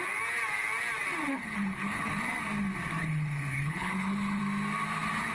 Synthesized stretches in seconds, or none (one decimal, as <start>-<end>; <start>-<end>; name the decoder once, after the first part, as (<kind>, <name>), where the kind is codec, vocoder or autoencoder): 1.3-2.1 (codec, HILCodec); 3.0-4.4